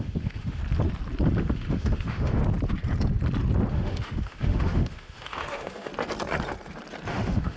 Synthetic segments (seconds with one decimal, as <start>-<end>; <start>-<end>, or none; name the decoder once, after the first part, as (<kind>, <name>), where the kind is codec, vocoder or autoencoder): 0.0-0.6 (autoencoder, DAC-VAE); 1.4-2.4; 3.7-5.9; 7.1-7.6